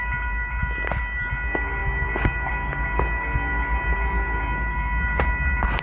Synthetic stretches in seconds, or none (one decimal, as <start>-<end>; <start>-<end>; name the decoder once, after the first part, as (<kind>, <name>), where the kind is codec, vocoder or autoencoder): none